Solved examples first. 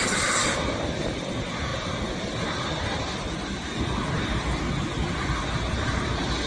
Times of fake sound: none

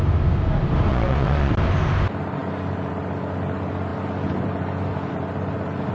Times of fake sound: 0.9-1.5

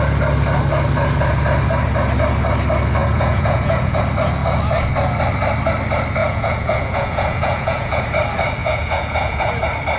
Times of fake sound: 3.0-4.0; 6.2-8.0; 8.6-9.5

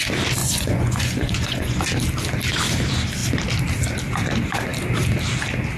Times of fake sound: 0.4-1.8